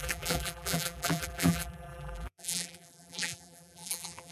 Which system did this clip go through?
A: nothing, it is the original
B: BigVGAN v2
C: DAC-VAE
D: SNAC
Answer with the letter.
B